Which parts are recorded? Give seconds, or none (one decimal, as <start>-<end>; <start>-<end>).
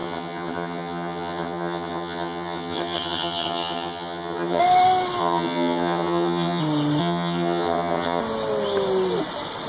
4.6-5.2; 6.6-7.0; 8.2-9.7